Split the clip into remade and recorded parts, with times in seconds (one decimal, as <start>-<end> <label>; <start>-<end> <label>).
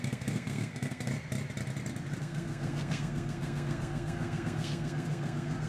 0.0-1.1 remade; 1.1-2.2 recorded; 2.2-5.7 remade